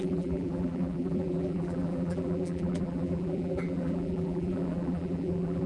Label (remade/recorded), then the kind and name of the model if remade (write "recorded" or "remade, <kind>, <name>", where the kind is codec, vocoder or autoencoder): remade, vocoder, BigVGAN v2